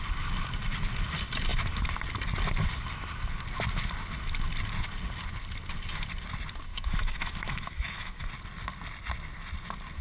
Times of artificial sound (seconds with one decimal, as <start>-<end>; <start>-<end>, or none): 6.7-8.3